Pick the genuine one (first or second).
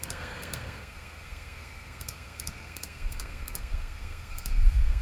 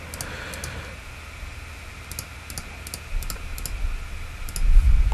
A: second